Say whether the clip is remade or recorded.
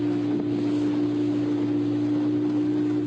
recorded